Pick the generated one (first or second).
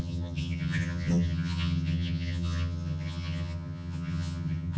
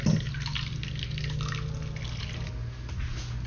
first